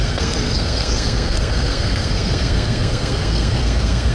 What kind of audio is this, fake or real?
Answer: fake